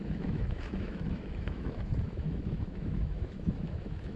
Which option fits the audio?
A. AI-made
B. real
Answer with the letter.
A